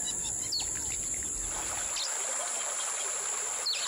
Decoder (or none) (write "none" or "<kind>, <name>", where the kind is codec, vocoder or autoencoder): none